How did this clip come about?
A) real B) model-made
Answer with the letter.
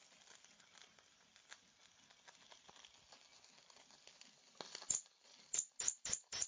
A